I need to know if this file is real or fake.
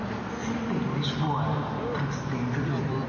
real